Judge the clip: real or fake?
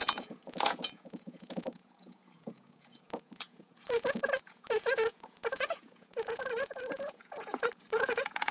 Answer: fake